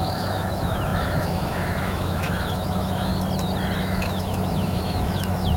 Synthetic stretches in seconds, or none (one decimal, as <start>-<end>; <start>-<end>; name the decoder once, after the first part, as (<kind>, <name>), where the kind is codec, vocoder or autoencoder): 0.0-3.1 (autoencoder, DAC-VAE); 3.8-5.6